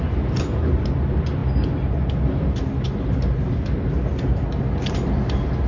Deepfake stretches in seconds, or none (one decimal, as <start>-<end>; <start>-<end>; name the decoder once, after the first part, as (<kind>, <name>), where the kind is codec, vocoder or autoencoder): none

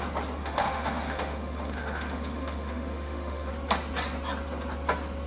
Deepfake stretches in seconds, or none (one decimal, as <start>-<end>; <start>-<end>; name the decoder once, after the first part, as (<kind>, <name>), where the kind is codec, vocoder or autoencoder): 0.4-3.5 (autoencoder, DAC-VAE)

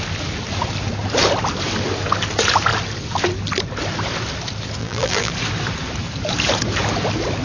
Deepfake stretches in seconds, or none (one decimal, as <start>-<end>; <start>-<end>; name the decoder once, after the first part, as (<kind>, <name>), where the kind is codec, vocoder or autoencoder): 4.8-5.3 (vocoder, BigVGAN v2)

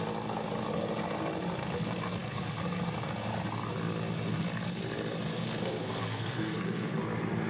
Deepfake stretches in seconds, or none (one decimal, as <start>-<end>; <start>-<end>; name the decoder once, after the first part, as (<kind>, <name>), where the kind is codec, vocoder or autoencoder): 5.3-7.0 (codec, SNAC)